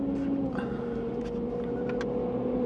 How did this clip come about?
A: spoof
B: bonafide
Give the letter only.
B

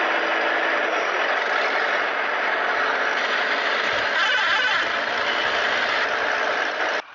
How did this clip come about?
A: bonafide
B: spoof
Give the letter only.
A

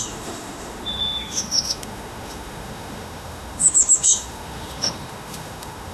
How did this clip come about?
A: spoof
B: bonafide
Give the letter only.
A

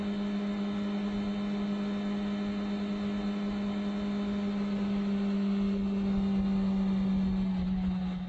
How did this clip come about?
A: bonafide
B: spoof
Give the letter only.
A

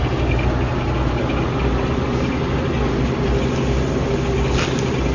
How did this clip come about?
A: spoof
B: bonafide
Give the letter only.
B